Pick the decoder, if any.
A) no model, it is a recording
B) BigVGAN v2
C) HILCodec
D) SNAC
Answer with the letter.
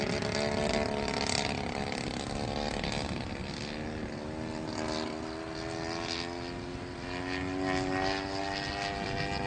A